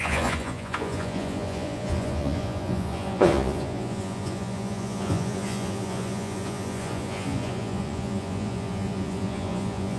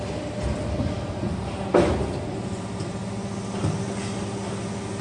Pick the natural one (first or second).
second